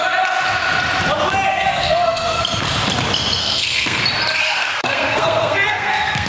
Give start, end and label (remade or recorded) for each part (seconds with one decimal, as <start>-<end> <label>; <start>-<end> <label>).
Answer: 0.0-1.5 recorded; 1.5-2.4 remade; 2.4-3.4 recorded; 3.4-4.0 remade; 4.0-4.4 recorded; 4.4-6.3 remade